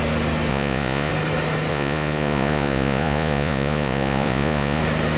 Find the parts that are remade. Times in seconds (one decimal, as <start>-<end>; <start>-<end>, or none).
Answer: 0.5-1.1; 1.7-4.8